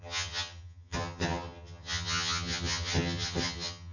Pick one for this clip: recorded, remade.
remade